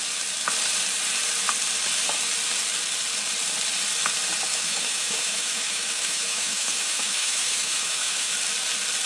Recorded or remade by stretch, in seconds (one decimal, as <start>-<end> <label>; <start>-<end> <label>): 0.0-4.5 recorded; 4.5-8.3 remade; 8.3-9.1 recorded